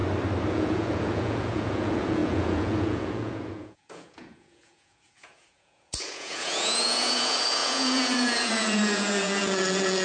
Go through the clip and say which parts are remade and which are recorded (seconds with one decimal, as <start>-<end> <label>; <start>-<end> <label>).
0.0-0.5 recorded; 0.5-10.0 remade